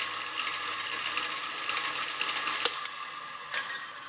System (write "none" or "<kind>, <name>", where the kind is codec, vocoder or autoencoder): none